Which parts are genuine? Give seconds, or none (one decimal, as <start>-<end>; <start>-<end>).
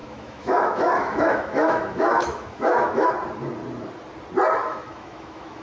3.1-4.6